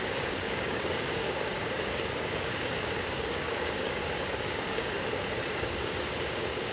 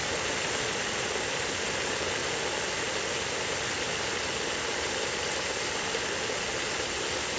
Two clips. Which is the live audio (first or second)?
second